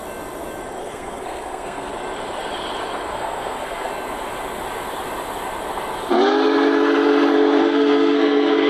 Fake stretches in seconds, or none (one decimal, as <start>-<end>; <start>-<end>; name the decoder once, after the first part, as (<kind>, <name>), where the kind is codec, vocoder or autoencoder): 0.8-1.9 (codec, SNAC); 3.1-3.9; 7.6-8.7